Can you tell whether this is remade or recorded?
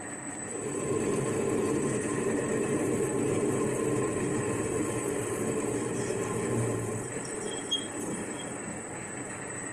remade